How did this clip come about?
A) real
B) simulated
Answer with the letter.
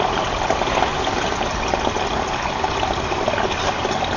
A